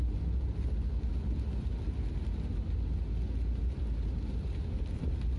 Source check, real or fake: real